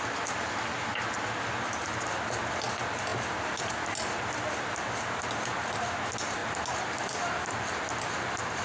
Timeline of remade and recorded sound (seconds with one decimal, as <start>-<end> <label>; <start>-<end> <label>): 0.0-8.6 recorded